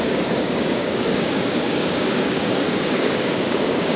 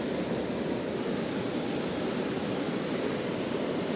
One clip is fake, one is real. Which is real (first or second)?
second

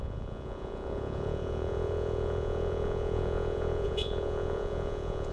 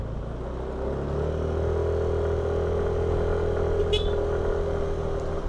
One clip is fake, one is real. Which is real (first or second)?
second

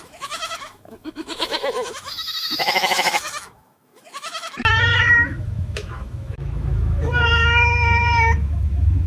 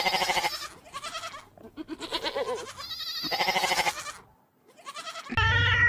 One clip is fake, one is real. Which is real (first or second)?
second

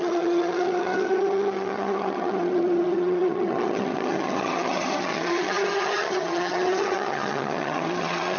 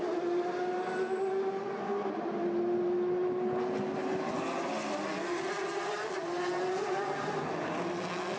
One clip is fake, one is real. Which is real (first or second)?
second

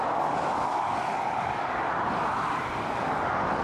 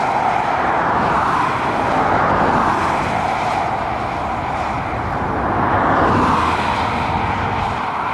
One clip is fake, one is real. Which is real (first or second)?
second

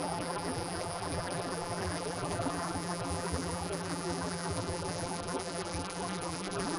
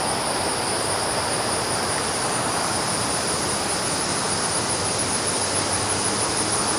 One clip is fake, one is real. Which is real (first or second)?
second